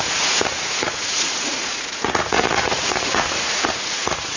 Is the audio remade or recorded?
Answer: remade